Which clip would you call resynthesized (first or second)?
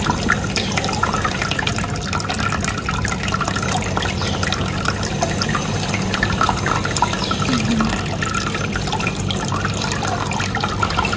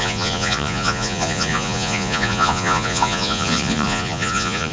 second